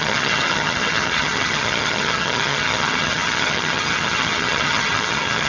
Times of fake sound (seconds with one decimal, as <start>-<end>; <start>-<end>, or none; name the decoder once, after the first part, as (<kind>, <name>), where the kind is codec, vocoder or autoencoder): 0.0-5.5 (vocoder, HiFi-GAN)